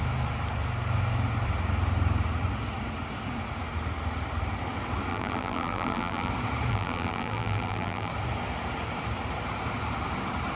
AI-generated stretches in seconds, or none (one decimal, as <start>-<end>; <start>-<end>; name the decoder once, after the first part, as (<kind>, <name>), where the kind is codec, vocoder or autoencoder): 5.1-6.3 (vocoder, BigVGAN v2); 6.7-8.1

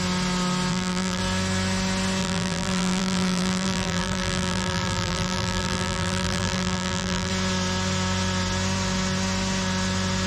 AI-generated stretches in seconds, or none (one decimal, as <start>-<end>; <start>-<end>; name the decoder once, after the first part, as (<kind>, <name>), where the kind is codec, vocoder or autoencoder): 0.7-1.2 (vocoder, BigVGAN v2); 2.2-7.3

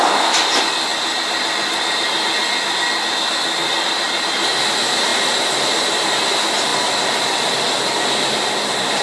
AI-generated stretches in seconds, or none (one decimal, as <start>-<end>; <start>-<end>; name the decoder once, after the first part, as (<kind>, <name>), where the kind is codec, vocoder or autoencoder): 3.6-4.6 (vocoder, BigVGAN v2); 6.7-7.8